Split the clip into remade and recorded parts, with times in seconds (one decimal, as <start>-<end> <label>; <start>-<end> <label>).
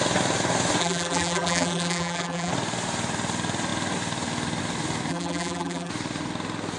0.0-0.8 recorded; 0.8-2.5 remade; 2.5-5.1 recorded; 5.1-5.9 remade; 5.9-6.8 recorded